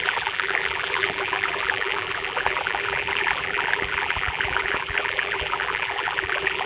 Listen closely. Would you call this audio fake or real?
fake